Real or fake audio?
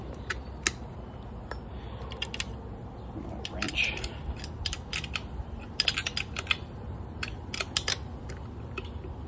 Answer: real